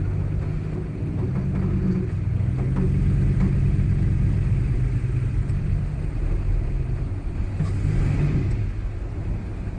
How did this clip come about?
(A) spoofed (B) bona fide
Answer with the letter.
B